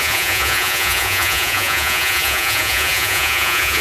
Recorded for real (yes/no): no